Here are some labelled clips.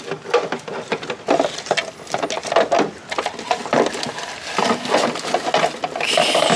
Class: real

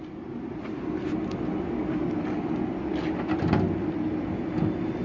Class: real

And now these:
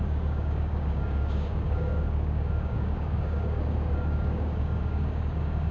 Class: fake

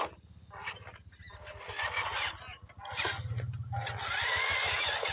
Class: real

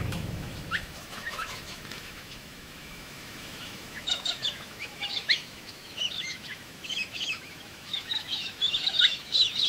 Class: fake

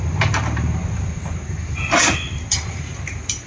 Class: fake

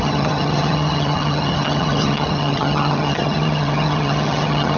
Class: fake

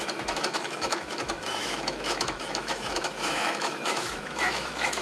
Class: fake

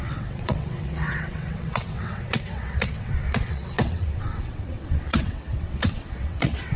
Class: fake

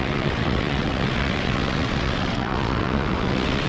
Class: fake